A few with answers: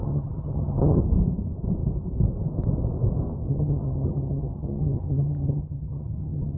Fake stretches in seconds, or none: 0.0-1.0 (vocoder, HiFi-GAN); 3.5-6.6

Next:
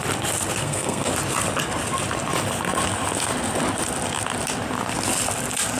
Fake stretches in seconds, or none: 0.6-1.1 (codec, SNAC)